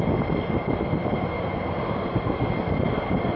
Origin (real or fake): real